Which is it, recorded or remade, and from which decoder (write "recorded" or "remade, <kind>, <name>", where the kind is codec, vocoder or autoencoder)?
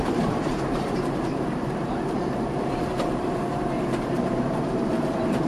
remade, vocoder, BigVGAN v2